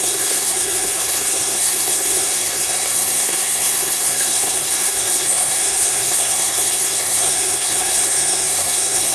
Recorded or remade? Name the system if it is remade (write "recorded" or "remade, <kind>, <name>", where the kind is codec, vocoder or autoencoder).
remade, codec, SNAC